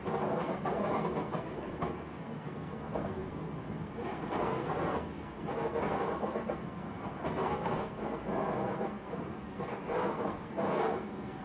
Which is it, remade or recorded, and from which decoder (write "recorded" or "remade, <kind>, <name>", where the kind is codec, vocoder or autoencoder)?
remade, codec, SNAC